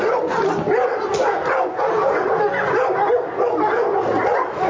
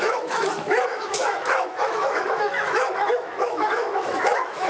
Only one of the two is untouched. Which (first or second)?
first